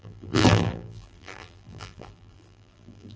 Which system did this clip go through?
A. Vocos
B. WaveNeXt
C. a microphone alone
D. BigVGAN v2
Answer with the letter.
D